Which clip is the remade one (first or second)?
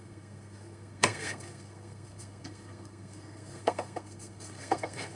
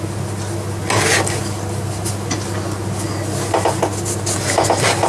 first